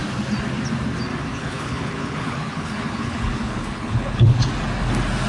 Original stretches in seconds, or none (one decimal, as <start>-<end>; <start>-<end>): 0.0-1.3; 4.5-5.3

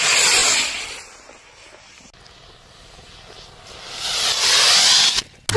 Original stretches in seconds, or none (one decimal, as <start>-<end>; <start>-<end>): 0.0-5.6

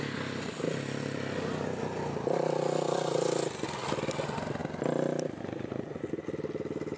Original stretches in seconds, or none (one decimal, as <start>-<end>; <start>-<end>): 0.0-7.0

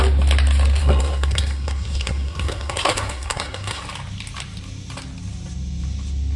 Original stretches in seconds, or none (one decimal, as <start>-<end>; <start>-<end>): 0.0-0.8; 3.8-6.4

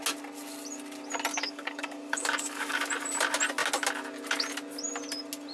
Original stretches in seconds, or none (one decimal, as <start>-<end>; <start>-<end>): 0.0-1.3; 2.8-5.5

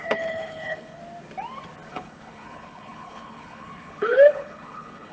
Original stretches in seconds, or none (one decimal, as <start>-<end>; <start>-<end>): 1.0-1.9

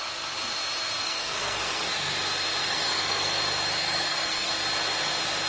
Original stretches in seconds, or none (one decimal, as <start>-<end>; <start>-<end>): 0.0-1.0; 1.9-2.6; 3.4-3.8; 4.5-5.5